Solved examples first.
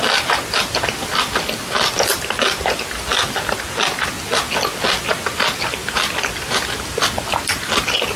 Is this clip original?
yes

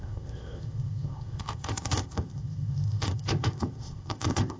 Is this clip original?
no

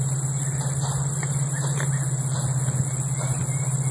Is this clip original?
yes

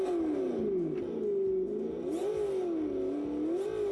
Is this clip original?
yes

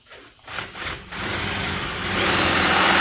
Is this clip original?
no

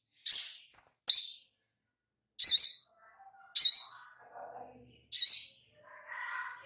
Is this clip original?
yes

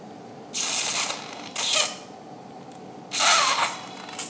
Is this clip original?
yes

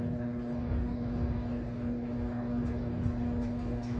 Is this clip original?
no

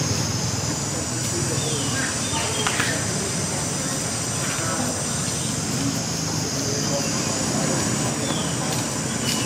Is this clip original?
yes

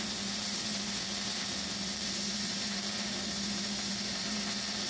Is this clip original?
no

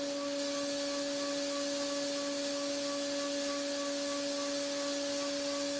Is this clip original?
yes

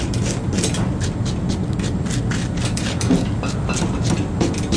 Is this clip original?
yes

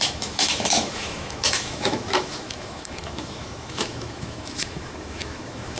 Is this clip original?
no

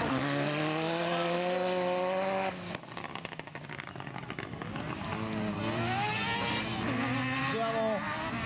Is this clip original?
yes